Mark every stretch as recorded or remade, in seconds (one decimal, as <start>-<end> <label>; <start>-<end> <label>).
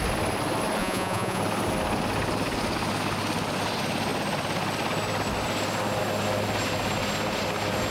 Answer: 0.0-0.8 recorded; 0.8-1.4 remade; 1.4-7.9 recorded